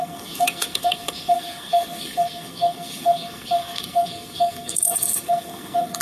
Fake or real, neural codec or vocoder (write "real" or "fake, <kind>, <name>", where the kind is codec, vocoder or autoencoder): fake, codec, SNAC